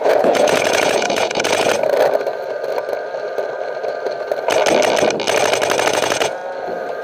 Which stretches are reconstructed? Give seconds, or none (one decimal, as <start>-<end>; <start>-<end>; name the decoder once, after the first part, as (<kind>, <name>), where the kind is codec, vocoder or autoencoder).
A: 0.0-1.7 (vocoder, Vocos); 5.9-6.4

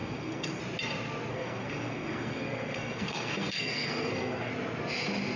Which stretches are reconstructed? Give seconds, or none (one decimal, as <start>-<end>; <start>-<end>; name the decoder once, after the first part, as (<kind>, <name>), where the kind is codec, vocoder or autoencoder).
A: 0.0-0.6 (codec, SNAC); 1.3-4.5

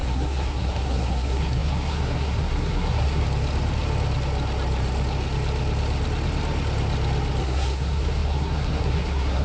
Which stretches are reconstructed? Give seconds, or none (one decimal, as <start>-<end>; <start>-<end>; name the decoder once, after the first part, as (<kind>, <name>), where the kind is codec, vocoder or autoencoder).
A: 0.0-3.2 (codec, SNAC); 7.4-9.4

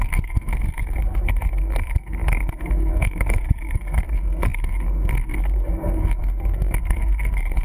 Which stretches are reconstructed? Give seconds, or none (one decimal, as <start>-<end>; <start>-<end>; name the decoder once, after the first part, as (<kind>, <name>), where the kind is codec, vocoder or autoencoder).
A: 0.0-7.6 (codec, SNAC)

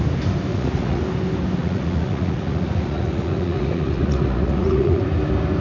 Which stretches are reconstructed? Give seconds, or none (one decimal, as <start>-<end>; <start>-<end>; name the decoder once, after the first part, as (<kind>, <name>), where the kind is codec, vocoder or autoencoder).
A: 0.5-1.0 (vocoder, Vocos); 1.6-5.0

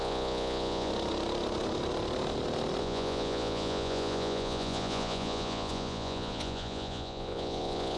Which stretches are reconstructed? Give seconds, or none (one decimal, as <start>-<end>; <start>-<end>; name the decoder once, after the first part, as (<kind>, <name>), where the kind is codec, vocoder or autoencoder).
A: 0.0-0.9 (vocoder, Vocos); 2.8-8.0

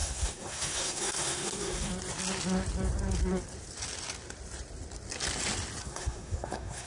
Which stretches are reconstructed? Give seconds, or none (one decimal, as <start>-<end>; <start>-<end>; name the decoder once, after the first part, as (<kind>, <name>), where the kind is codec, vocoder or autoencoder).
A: 0.0-1.9 (codec, SNAC); 5.8-6.9